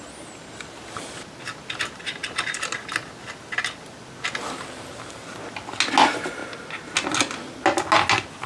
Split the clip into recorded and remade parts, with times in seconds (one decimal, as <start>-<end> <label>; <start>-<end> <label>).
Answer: 0.0-8.5 recorded